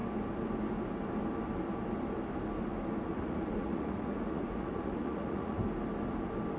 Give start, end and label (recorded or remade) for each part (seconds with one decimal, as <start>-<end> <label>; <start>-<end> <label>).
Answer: 0.0-3.1 recorded; 3.1-5.6 remade; 5.6-6.6 recorded